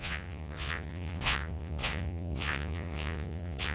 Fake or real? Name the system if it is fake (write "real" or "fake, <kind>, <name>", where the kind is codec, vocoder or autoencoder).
fake, vocoder, Vocos